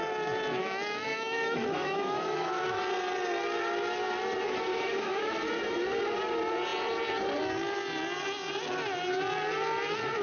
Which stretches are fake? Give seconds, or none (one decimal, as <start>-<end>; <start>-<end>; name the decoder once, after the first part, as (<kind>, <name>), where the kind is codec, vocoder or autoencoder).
0.6-2.8 (autoencoder, DAC-VAE); 4.7-5.3

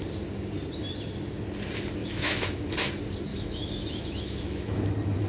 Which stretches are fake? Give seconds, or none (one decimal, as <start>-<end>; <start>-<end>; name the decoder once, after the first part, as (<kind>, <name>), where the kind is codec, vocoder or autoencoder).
2.0-2.7 (autoencoder, DAC-VAE); 3.3-4.8

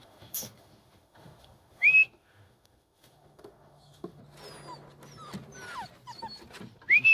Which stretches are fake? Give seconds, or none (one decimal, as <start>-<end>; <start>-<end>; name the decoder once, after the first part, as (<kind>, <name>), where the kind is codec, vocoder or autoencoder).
0.0-4.2 (autoencoder, DAC-VAE)